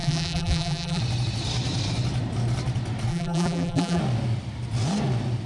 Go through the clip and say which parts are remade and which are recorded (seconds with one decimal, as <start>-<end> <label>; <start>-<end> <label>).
0.0-1.0 remade; 1.0-3.1 recorded; 3.1-4.0 remade; 4.0-5.5 recorded